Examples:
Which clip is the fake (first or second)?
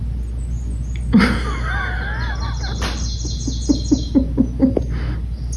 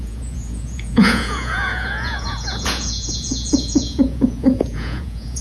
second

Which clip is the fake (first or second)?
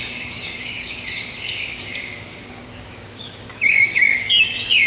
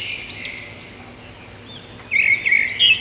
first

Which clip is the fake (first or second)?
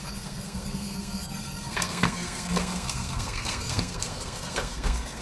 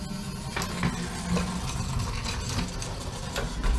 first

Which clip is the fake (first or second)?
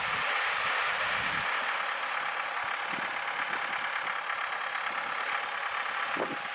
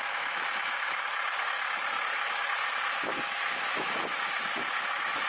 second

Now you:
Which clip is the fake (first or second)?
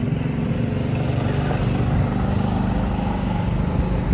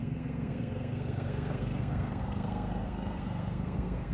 second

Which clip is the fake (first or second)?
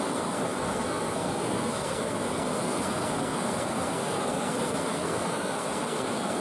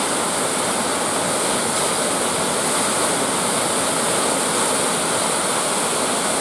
first